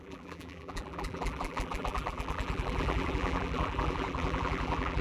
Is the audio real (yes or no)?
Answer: no